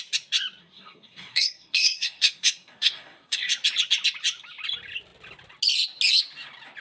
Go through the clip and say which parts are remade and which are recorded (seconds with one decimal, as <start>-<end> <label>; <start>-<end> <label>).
0.0-0.6 recorded; 0.6-3.5 remade; 3.5-6.8 recorded